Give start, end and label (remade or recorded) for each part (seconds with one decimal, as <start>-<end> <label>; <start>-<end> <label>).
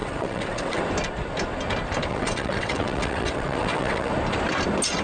0.0-0.8 remade; 0.8-2.1 recorded; 2.1-4.1 remade; 4.1-5.0 recorded